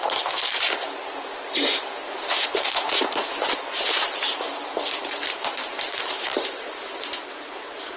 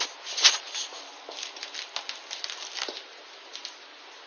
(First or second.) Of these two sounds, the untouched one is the second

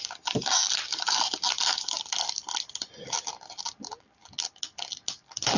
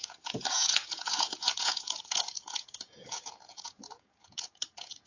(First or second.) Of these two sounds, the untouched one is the first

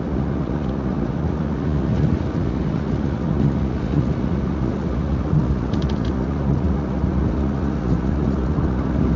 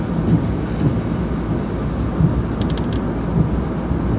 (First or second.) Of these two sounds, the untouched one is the second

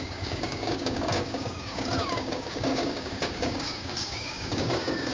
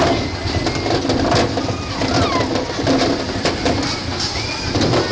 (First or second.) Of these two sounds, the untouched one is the second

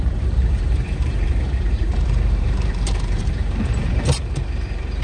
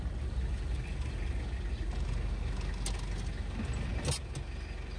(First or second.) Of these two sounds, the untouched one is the second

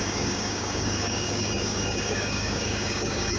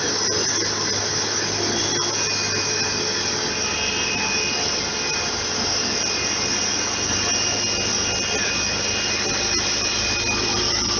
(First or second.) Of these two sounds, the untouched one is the second